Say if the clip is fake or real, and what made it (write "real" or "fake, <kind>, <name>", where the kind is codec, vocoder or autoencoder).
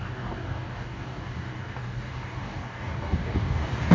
fake, codec, DAC